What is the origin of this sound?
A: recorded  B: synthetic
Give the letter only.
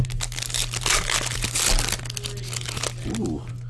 A